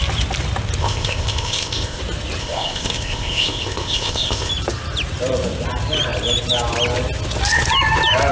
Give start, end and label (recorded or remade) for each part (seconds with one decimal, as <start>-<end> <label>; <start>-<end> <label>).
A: 0.0-0.8 recorded; 0.8-2.0 remade; 2.0-2.4 recorded; 2.4-4.5 remade; 4.5-8.3 recorded